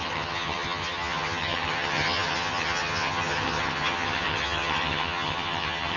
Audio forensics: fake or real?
fake